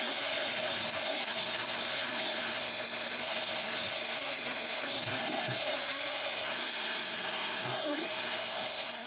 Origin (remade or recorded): remade